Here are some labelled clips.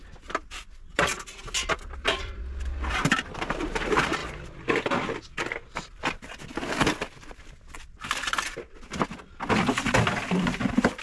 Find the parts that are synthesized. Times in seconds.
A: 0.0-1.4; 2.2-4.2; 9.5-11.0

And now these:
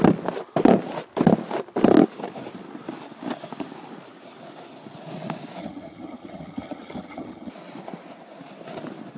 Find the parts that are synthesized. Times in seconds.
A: 5.6-7.5

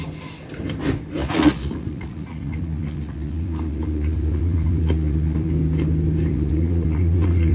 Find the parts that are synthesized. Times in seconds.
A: 1.2-5.5; 6.3-7.5

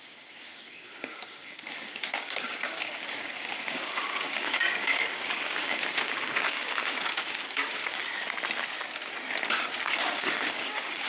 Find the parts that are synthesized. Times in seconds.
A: 0.0-8.0; 9.6-11.1